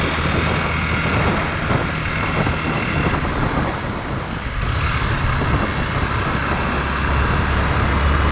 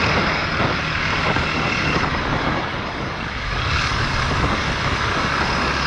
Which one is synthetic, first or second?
second